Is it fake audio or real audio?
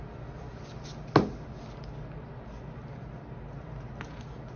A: real